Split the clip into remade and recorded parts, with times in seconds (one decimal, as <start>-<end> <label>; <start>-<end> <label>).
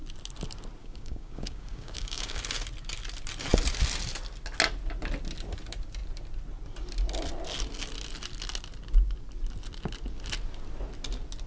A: 0.0-0.8 recorded; 0.8-2.4 remade; 2.4-11.5 recorded